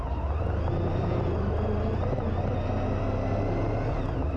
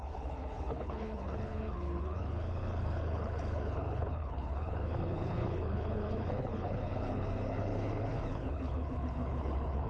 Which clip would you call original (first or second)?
first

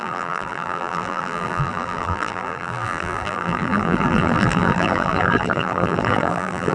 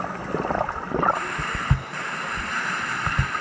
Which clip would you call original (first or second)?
second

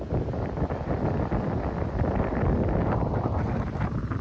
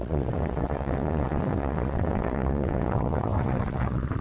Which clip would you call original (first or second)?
first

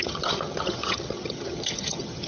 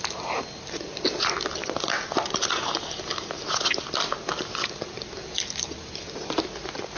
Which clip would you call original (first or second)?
second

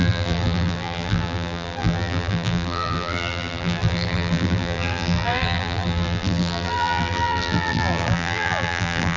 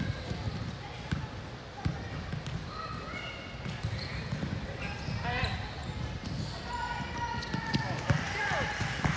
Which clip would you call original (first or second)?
second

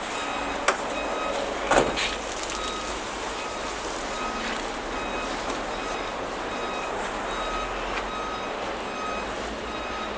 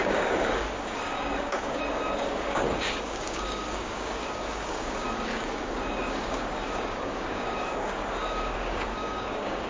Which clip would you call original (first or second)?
first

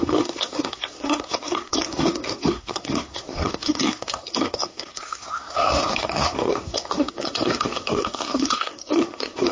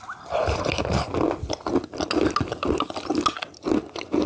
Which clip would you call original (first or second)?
second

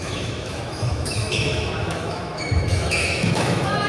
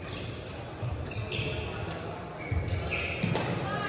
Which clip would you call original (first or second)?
second